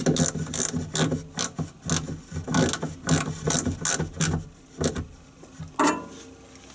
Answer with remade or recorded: recorded